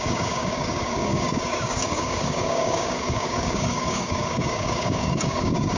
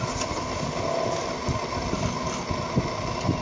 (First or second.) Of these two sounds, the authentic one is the second